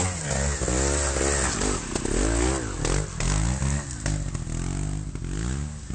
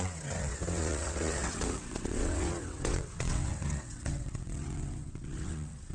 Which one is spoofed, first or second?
second